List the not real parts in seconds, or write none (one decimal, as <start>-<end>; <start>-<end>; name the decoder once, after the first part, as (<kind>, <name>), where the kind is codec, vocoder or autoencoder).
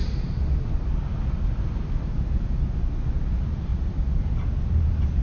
3.7-4.3 (vocoder, BigVGAN v2)